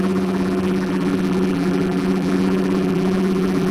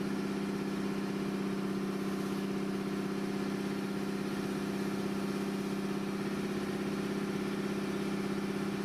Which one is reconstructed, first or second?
first